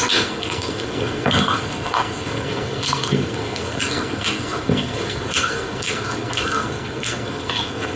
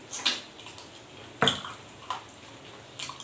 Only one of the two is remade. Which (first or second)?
first